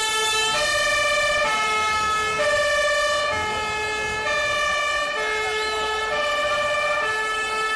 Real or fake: real